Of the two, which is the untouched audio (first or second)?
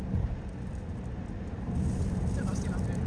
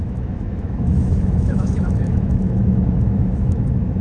first